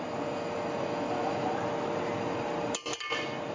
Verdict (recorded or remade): recorded